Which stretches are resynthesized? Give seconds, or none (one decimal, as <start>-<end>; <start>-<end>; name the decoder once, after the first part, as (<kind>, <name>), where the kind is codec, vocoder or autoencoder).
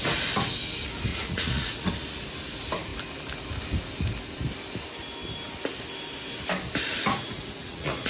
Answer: 1.1-1.9 (vocoder, Vocos); 7.1-8.1